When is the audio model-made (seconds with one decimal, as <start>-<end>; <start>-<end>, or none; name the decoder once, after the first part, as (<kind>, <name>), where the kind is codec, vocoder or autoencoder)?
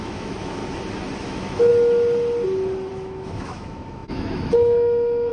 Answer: 0.0-0.6 (autoencoder, DAC-VAE); 1.2-1.7; 2.9-5.3